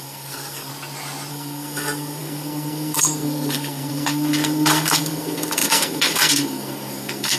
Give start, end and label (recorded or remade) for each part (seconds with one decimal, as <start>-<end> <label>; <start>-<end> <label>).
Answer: 0.0-0.7 remade; 0.7-1.3 recorded; 1.3-7.4 remade